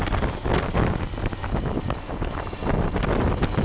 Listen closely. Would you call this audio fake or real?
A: real